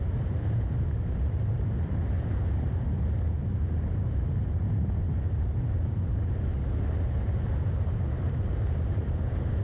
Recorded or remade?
remade